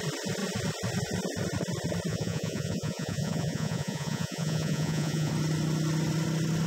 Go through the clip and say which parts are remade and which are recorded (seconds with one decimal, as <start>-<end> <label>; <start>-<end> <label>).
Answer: 0.0-2.1 recorded; 2.1-5.3 remade; 5.3-6.7 recorded